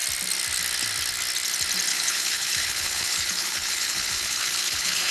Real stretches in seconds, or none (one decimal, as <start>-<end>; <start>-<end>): 0.0-1.9